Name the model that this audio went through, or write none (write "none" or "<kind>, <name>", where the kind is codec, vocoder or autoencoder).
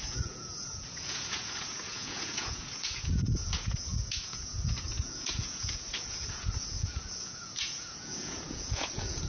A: vocoder, Vocos